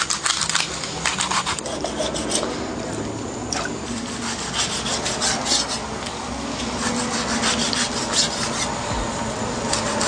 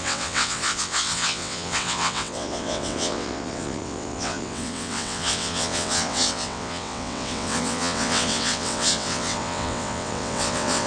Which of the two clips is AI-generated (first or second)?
second